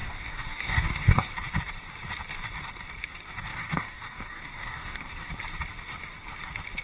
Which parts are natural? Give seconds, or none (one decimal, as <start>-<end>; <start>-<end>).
1.3-3.5; 5.3-6.8